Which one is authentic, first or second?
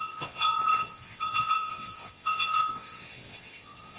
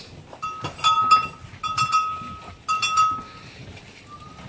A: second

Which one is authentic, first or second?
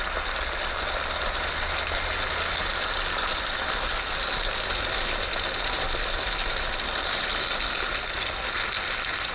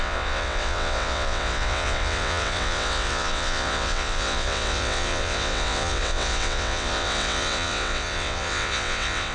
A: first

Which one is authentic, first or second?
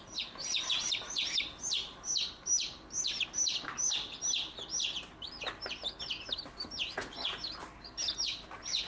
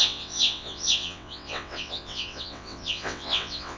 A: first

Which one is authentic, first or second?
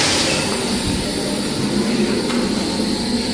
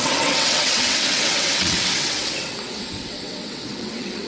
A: first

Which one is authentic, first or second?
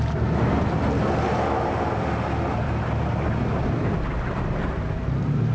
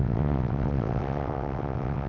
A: first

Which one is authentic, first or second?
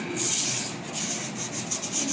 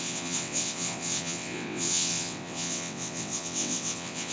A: first